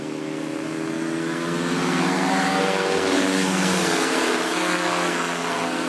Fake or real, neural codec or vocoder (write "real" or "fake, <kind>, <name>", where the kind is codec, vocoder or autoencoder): fake, codec, SNAC